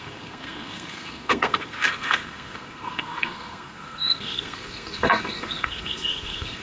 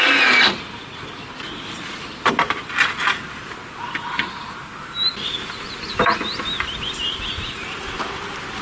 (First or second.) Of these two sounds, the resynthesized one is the first